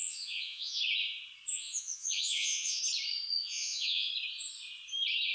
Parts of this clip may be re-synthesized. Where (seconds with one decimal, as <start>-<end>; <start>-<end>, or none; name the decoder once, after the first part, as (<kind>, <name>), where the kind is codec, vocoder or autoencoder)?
0.0-0.8 (vocoder, Vocos); 1.5-2.8; 3.4-4.1